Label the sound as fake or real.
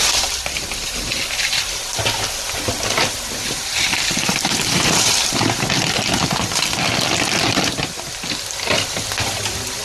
real